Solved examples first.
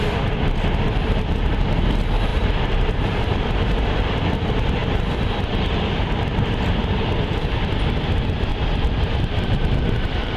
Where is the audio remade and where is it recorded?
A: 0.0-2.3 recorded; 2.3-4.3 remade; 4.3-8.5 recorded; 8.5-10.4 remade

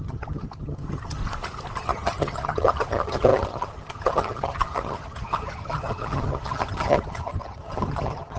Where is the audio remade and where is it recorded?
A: 0.0-1.2 remade; 1.2-1.8 recorded; 1.8-8.4 remade

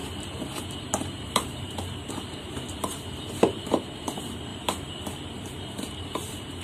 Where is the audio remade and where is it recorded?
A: 0.0-4.5 remade; 4.5-5.3 recorded; 5.3-6.6 remade

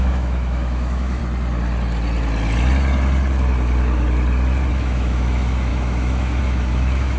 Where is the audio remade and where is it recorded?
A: 0.0-1.2 remade; 1.2-4.7 recorded; 4.7-7.2 remade

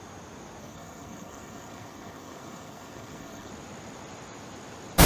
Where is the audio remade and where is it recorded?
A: 0.0-0.6 recorded; 0.6-3.5 remade; 3.5-5.1 recorded